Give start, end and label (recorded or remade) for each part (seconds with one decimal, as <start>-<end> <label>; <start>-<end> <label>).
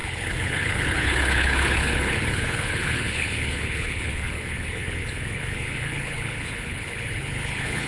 0.0-7.9 remade